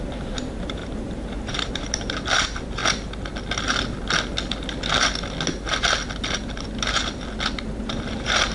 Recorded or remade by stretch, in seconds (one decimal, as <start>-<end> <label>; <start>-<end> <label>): 0.0-2.8 remade; 2.8-7.6 recorded; 7.6-8.5 remade

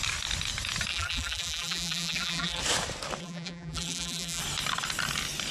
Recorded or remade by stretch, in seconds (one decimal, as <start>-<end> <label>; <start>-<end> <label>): 0.0-0.9 recorded; 0.9-2.6 remade; 2.6-3.2 recorded; 3.2-4.4 remade; 4.4-5.5 recorded

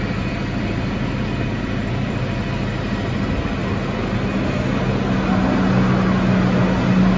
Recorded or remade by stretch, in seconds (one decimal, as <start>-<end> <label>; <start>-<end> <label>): 0.0-7.2 recorded

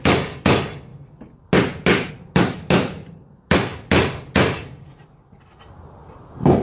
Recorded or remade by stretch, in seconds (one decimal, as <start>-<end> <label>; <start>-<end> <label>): 0.0-6.6 recorded

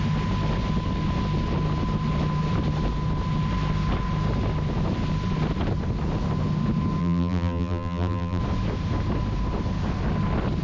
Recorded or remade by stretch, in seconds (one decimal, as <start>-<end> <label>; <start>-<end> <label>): 0.0-7.0 recorded; 7.0-8.4 remade; 8.4-10.6 recorded

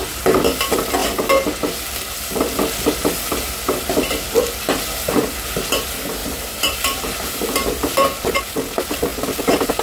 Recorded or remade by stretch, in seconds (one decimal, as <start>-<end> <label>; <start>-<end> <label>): 0.0-6.2 recorded; 6.2-7.3 remade; 7.3-9.8 recorded

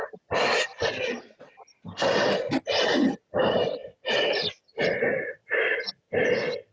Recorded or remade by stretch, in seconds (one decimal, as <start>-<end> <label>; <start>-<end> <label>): 0.0-3.8 recorded; 3.8-4.6 remade; 4.6-5.4 recorded; 5.4-5.9 remade; 5.9-6.7 recorded